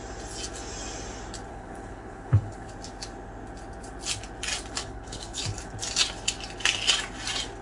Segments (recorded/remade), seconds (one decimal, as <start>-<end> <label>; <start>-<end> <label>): 0.0-1.5 recorded; 1.5-2.7 remade; 2.7-4.8 recorded; 4.8-5.6 remade; 5.6-7.6 recorded